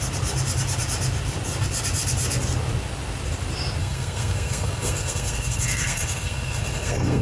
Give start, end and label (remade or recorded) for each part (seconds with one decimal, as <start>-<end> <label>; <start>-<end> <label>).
0.0-3.8 recorded; 3.8-7.2 remade

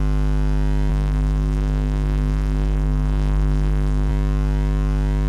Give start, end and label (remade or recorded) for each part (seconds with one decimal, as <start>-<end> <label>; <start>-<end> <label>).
0.0-0.9 recorded; 0.9-4.1 remade; 4.1-5.3 recorded

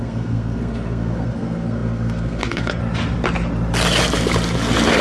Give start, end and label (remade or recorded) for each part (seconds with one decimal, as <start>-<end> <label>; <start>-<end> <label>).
0.0-2.8 remade; 2.8-5.0 recorded

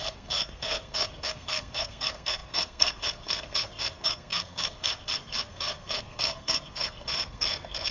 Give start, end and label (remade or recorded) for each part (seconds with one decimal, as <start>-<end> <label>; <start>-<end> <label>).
0.0-7.9 remade

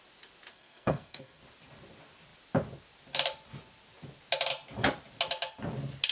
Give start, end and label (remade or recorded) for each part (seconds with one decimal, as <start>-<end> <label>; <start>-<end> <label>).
0.0-0.5 recorded; 0.5-1.4 remade; 1.4-6.1 recorded